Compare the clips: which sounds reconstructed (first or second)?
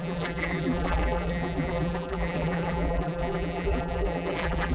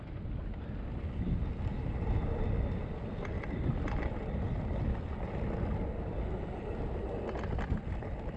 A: first